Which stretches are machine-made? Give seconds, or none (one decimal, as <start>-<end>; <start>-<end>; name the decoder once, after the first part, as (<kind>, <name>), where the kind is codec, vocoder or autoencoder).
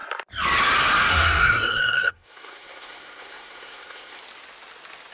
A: 1.1-4.2 (codec, SNAC)